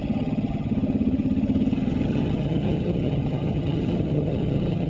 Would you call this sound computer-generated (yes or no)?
yes